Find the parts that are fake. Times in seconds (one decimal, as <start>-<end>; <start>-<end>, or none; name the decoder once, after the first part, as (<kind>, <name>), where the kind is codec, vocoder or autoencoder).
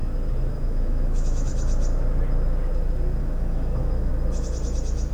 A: 0.5-1.5 (autoencoder, DAC-VAE); 3.2-4.1